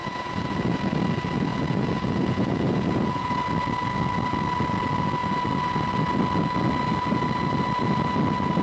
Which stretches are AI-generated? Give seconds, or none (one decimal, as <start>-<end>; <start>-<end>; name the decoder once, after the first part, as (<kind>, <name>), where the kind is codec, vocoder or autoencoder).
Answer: 0.0-0.8 (vocoder, Vocos); 1.5-3.4